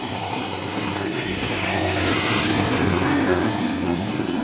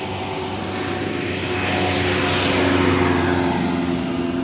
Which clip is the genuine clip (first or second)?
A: second